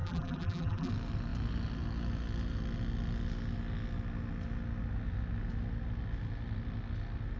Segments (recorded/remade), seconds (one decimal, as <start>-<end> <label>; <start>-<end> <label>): 0.0-0.9 remade; 0.9-7.4 recorded